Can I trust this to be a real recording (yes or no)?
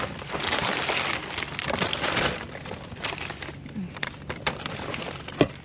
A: yes